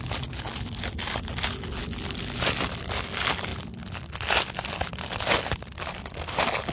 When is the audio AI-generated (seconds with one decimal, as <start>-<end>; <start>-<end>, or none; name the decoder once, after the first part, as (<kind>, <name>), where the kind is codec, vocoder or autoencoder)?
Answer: none